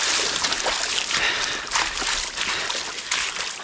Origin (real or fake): real